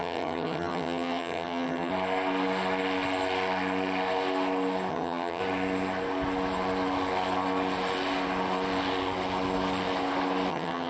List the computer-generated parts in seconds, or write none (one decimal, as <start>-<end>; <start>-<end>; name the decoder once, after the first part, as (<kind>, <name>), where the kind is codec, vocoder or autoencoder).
0.0-1.9 (vocoder, HiFi-GAN); 4.9-5.4; 10.5-10.9